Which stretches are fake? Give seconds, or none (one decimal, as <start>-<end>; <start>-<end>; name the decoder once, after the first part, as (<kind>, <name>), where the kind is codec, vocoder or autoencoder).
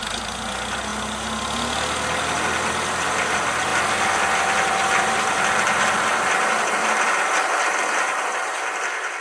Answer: none